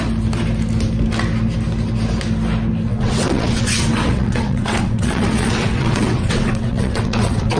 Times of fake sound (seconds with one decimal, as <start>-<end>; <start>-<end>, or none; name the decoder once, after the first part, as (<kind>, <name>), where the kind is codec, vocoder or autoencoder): 2.9-7.6 (vocoder, WaveNeXt)